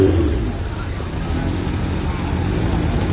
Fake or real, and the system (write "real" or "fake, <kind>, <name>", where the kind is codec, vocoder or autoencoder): real